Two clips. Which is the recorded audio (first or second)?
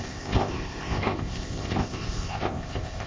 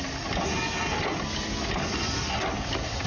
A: second